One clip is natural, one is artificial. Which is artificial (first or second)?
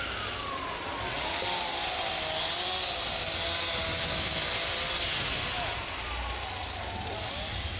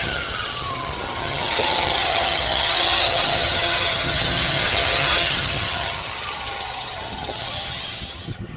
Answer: second